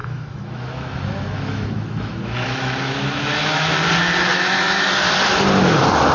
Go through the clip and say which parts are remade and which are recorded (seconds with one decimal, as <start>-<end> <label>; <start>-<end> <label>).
0.0-3.7 remade; 3.7-4.3 recorded; 4.3-4.9 remade; 4.9-6.1 recorded